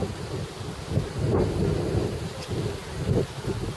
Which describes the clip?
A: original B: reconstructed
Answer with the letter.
A